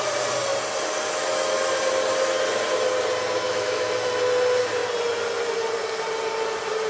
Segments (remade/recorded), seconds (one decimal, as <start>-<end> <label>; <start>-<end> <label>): 0.0-3.5 recorded; 3.5-4.1 remade; 4.1-6.9 recorded